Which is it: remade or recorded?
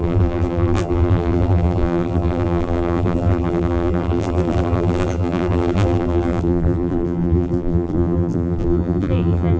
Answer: remade